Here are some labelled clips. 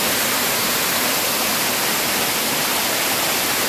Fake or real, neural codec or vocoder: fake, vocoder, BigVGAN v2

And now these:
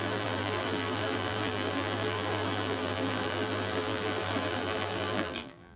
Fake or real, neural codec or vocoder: fake, vocoder, BigVGAN v2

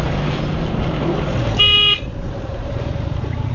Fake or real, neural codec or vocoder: fake, vocoder, BigVGAN v2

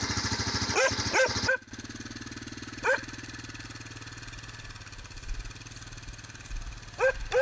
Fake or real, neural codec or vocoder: real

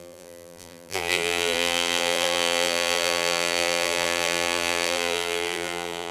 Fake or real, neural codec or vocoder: fake, vocoder, BigVGAN v2